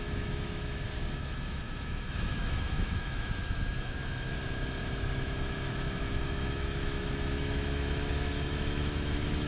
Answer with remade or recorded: remade